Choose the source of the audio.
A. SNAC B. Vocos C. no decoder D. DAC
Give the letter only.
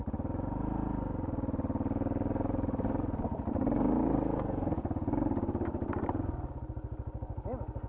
C